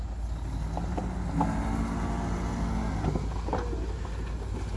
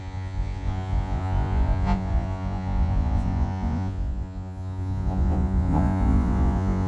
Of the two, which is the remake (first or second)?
second